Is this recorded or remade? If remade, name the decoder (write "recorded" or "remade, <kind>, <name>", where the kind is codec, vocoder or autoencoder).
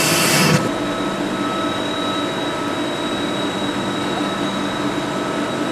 recorded